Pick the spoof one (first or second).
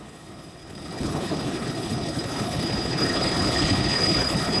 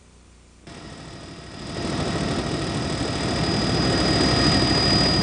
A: first